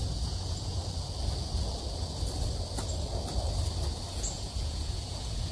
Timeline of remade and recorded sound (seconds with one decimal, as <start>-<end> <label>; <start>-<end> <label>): 0.0-0.8 remade; 0.8-4.1 recorded; 4.1-5.5 remade